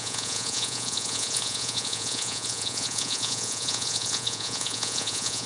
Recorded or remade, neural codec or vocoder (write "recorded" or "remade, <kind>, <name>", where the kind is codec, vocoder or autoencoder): remade, vocoder, Vocos